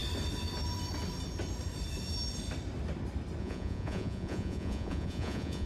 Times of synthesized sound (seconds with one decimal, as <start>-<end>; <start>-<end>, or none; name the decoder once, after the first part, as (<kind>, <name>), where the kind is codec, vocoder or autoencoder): 3.4-5.7 (vocoder, Vocos)